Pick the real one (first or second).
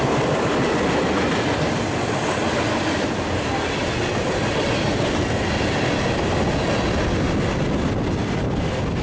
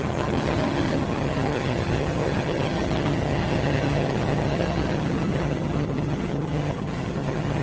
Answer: first